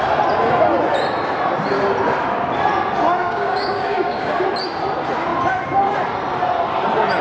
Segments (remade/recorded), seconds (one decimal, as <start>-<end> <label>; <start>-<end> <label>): 0.0-3.2 recorded; 3.2-4.3 remade; 4.3-7.2 recorded